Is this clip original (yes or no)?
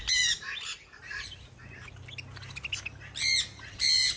yes